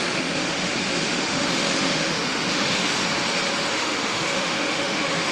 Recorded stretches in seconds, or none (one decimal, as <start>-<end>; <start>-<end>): 3.0-3.7